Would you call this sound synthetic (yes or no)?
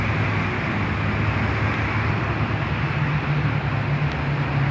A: no